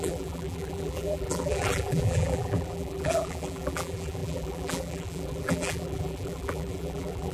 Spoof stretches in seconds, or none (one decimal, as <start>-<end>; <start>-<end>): 0.0-7.3